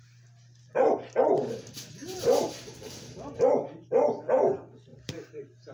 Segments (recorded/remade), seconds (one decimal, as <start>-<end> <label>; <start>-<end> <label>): 0.0-2.0 recorded; 2.0-2.9 remade; 2.9-4.9 recorded; 4.9-5.7 remade